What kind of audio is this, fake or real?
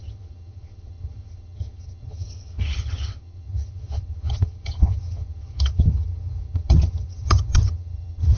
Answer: fake